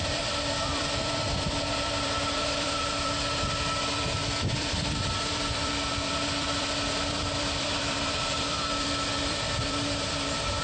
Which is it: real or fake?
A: fake